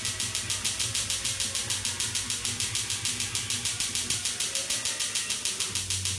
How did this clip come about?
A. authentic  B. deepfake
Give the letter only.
A